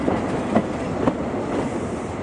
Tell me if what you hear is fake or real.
real